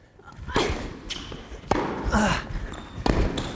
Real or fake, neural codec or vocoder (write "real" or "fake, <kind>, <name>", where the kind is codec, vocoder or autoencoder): real